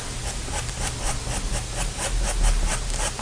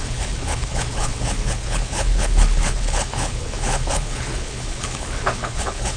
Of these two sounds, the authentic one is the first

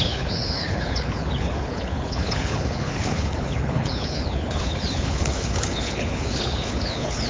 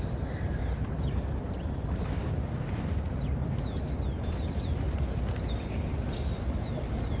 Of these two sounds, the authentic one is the second